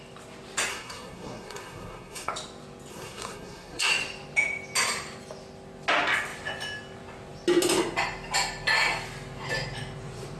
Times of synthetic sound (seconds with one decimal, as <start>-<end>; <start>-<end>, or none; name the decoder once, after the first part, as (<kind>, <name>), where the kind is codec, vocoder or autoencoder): 0.7-2.3 (codec, SNAC); 2.9-3.9